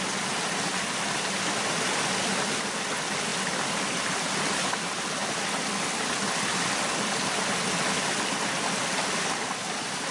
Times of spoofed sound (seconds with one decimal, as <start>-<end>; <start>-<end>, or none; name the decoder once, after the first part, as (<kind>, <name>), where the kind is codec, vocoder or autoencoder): none

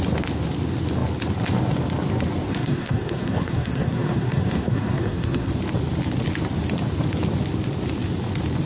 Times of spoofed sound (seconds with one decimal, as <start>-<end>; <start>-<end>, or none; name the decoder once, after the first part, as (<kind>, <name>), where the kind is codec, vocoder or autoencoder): 2.5-5.5 (codec, SNAC)

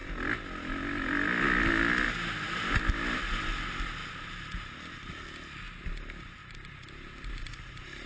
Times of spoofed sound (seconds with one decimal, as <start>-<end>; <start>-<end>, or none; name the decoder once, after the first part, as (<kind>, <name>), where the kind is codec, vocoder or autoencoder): 4.0-5.1 (vocoder, BigVGAN v2); 6.4-8.1

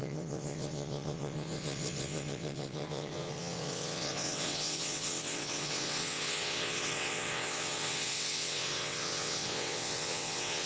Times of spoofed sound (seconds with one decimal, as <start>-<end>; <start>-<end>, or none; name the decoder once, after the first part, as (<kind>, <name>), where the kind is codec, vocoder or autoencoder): 0.0-10.7 (vocoder, WaveNeXt)

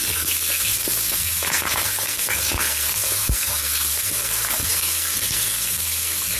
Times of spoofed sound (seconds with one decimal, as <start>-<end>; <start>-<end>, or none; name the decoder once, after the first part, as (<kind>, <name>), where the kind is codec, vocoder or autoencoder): 0.0-6.4 (codec, SNAC)

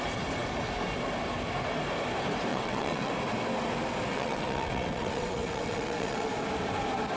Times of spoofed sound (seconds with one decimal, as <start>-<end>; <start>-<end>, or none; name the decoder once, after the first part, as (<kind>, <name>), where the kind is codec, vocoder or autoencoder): 2.5-3.1 (vocoder, WaveNeXt); 4.1-6.3